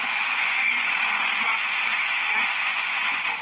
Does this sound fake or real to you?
fake